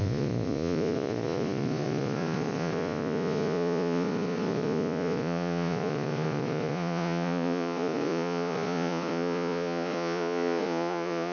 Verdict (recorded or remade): remade